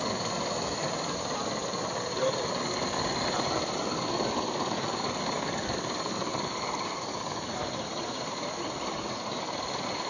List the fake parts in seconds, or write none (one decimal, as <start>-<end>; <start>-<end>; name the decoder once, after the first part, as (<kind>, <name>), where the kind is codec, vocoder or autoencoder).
none

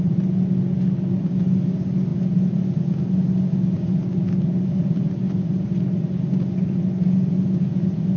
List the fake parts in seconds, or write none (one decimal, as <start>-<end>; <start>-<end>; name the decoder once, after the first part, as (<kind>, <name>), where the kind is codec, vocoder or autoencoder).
none

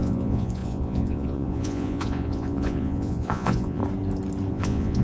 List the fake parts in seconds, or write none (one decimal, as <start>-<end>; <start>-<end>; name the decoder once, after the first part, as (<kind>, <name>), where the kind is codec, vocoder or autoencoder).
0.0-3.8 (vocoder, Vocos); 4.5-5.0